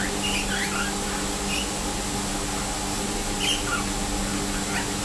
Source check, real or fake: real